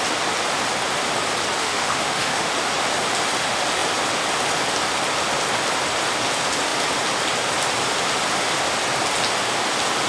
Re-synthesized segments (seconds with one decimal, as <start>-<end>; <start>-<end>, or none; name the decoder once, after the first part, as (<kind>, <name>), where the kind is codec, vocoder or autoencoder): 1.6-2.6 (autoencoder, DAC-VAE)